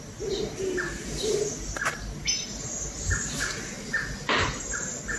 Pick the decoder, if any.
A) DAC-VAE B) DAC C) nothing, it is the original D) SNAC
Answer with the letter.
C